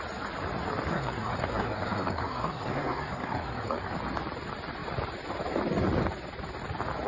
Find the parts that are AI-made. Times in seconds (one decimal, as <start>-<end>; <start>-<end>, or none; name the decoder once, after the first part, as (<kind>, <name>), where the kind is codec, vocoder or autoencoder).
0.9-3.9 (codec, SNAC)